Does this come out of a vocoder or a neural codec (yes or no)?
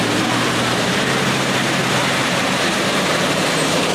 yes